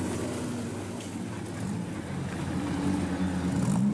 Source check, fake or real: real